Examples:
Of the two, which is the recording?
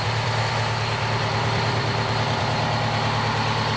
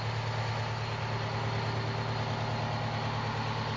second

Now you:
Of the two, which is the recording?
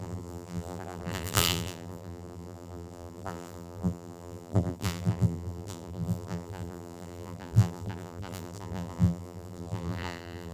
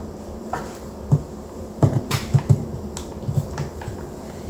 second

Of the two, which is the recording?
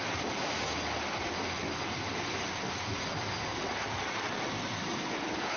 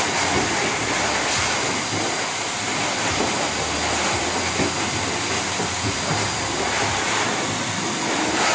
second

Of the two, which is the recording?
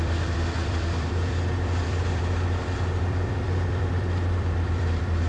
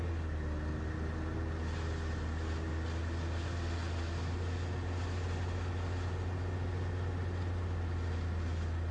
second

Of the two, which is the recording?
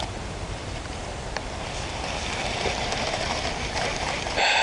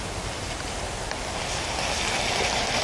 second